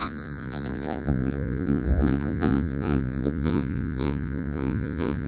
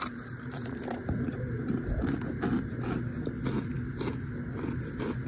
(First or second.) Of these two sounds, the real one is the second